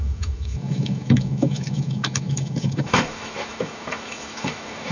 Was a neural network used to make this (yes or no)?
yes